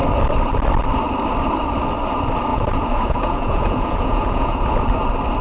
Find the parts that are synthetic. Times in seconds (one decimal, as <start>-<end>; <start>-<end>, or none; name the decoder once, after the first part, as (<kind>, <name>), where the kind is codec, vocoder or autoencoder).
2.5-4.6 (vocoder, Vocos)